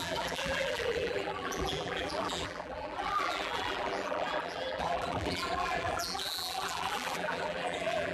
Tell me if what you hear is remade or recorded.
remade